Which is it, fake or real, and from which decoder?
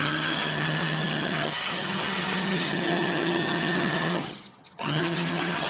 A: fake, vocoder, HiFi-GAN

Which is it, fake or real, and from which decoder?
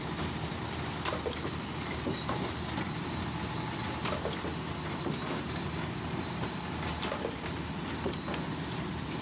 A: real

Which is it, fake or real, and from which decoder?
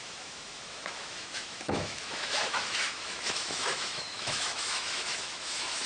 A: fake, autoencoder, DAC-VAE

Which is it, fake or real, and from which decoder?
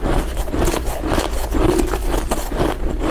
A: real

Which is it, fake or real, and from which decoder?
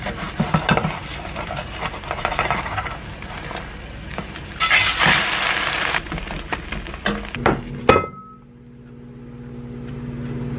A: real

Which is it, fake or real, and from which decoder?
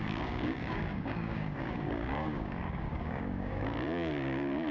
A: fake, codec, DAC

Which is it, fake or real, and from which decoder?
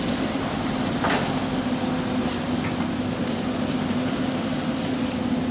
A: real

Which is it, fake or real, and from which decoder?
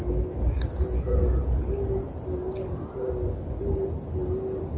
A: real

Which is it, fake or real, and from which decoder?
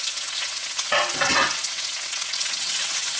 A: fake, vocoder, WaveNeXt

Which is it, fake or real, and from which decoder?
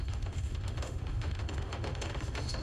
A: fake, autoencoder, DAC-VAE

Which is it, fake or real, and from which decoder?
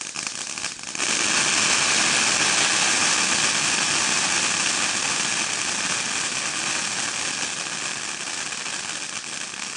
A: real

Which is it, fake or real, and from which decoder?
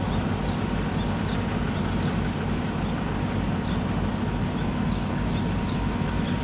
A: real